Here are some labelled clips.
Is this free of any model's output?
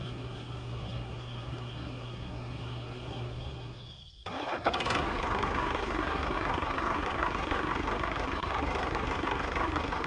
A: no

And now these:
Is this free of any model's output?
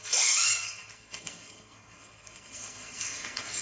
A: no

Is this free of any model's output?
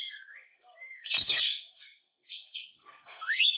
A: no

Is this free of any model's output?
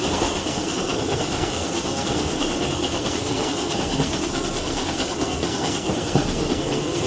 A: no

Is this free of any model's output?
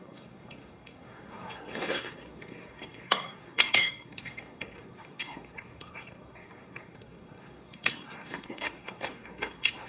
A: no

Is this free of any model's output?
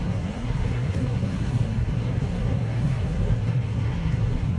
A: no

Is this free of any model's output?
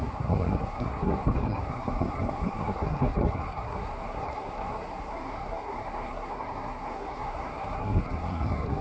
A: no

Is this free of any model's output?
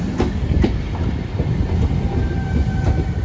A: yes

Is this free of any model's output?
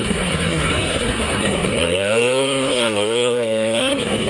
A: no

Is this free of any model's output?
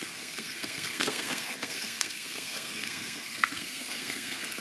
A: no